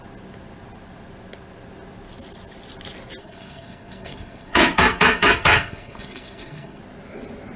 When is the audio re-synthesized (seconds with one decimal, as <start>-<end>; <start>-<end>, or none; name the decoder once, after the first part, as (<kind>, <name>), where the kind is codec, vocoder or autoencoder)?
3.2-6.8 (codec, SNAC)